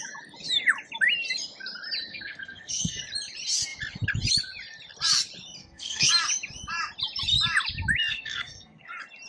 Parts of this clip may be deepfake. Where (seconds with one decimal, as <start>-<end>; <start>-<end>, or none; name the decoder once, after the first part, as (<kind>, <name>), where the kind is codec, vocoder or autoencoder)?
2.1-3.0 (codec, SNAC); 5.6-6.1; 8.1-8.9